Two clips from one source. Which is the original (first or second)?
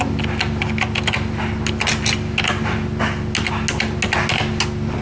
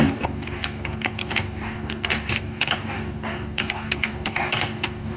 first